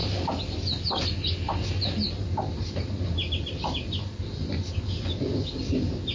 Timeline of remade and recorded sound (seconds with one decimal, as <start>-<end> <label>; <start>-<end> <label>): 0.0-6.1 recorded

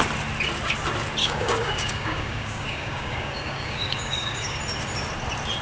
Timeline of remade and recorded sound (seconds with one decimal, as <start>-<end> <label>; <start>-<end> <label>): 0.0-1.2 recorded; 1.2-4.6 remade; 4.6-5.6 recorded

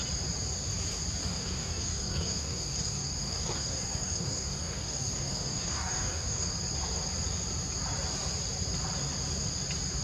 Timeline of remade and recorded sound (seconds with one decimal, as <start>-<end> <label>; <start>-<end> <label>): 0.0-1.2 recorded; 1.2-6.5 remade; 6.5-10.0 recorded